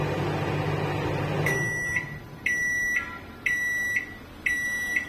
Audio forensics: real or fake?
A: real